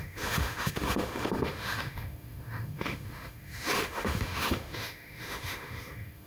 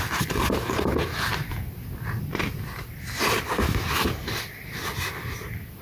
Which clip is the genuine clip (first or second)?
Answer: second